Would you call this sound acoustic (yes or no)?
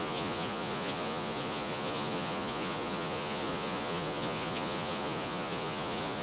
no